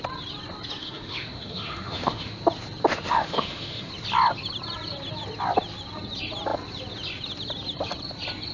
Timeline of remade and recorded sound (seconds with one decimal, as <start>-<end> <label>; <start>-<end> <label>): 0.0-0.8 recorded; 0.8-2.4 remade; 2.4-2.9 recorded; 2.9-3.9 remade; 3.9-8.5 recorded